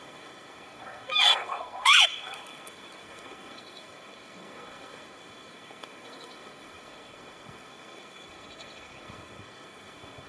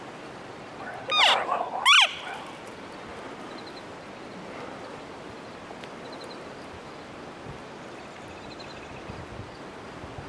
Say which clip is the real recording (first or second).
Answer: second